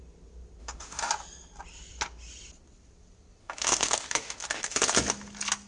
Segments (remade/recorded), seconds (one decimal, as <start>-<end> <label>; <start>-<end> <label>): 0.0-0.6 recorded; 0.6-1.1 remade; 1.1-3.4 recorded; 3.4-4.8 remade; 4.8-5.7 recorded